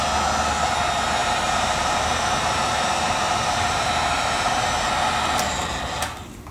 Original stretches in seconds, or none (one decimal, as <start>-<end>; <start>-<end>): 0.0-1.2; 3.9-6.5